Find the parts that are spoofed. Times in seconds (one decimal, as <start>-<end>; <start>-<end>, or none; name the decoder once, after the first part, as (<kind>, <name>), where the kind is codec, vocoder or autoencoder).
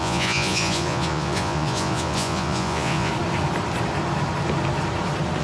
0.0-3.1 (vocoder, Vocos)